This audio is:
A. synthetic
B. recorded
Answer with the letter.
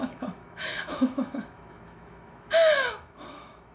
A